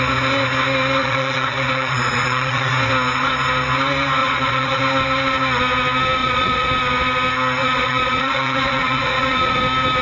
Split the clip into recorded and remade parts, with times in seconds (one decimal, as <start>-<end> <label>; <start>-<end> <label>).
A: 0.0-1.0 recorded; 1.0-2.7 remade; 2.7-4.2 recorded; 4.2-4.8 remade; 4.8-6.2 recorded; 6.2-6.7 remade; 6.7-7.6 recorded; 7.6-9.6 remade; 9.6-10.0 recorded